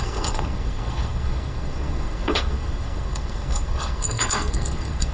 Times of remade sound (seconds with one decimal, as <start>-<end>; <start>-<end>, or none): 0.0-5.1

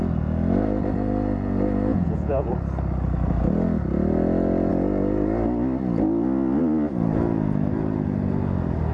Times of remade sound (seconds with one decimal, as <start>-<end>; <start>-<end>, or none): 1.9-2.5

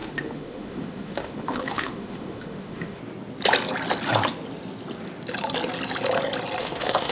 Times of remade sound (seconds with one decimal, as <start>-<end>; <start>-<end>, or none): 0.0-3.0; 6.6-7.1